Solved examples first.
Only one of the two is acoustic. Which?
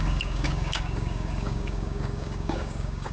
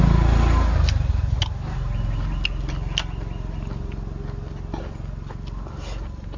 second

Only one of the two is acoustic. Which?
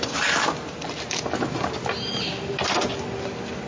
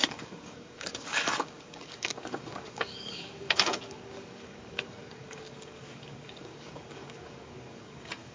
first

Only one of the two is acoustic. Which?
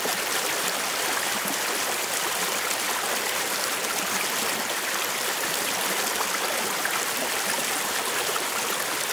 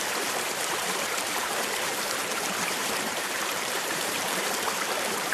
first